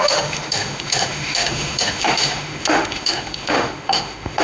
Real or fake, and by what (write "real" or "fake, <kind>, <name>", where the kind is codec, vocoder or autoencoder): fake, autoencoder, DAC-VAE